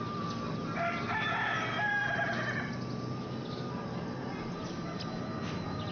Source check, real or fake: real